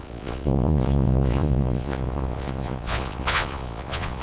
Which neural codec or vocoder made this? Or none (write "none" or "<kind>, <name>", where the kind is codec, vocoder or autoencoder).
vocoder, Vocos